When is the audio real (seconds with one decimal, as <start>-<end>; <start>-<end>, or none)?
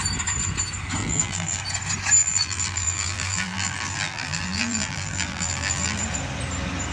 0.0-1.0; 1.6-2.2; 6.0-6.9